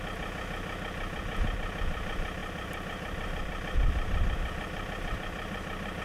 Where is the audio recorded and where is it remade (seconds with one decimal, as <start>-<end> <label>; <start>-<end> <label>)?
0.0-2.4 recorded; 2.4-6.0 remade